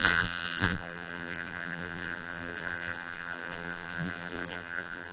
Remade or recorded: remade